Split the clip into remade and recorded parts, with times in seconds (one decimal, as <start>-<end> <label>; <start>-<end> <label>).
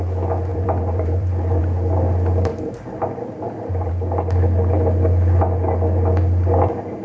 0.0-0.5 recorded; 0.5-1.6 remade; 1.6-2.5 recorded; 2.5-3.9 remade; 3.9-7.0 recorded